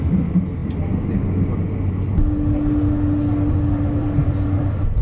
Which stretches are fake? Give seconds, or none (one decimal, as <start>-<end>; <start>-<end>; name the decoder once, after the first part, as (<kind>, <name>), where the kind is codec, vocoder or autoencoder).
0.0-0.6 (vocoder, BigVGAN v2); 3.6-5.0